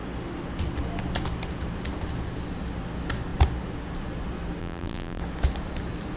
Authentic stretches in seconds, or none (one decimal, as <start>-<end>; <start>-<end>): 0.0-4.6; 5.2-6.2